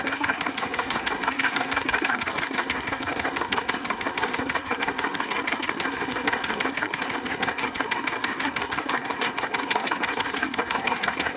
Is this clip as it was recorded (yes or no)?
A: no